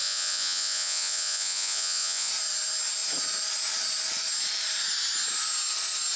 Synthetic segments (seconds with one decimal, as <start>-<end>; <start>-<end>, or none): 0.0-2.3